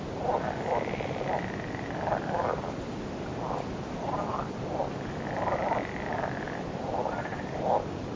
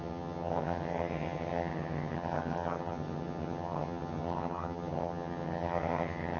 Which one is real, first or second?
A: first